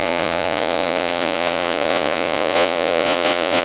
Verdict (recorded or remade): remade